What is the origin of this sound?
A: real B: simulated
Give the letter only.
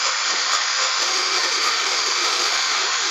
B